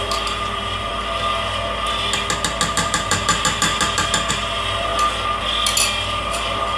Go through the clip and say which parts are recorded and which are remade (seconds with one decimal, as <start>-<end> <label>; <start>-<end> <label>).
0.0-0.9 remade; 0.9-2.7 recorded; 2.7-3.7 remade; 3.7-4.3 recorded; 4.3-4.9 remade; 4.9-6.3 recorded; 6.3-6.8 remade